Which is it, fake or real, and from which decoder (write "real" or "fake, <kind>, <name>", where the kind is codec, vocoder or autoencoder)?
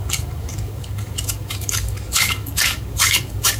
fake, codec, DAC